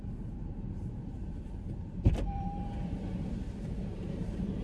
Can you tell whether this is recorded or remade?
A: remade